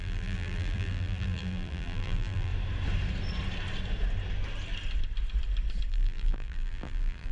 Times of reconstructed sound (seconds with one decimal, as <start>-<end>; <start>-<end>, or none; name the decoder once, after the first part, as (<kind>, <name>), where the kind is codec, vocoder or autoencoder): 0.0-2.5 (vocoder, BigVGAN v2); 5.9-7.3